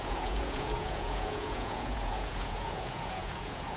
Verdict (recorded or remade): remade